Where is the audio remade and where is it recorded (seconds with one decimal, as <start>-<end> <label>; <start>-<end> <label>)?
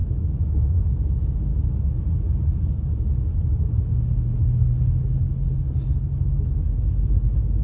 0.0-0.8 remade; 0.8-7.6 recorded